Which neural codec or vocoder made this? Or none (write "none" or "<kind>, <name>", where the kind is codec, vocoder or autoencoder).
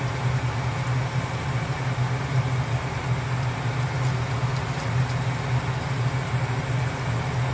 none